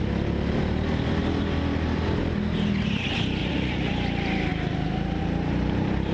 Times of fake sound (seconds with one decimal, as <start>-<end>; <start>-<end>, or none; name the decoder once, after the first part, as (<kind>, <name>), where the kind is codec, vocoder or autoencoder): 3.4-3.9 (vocoder, Vocos)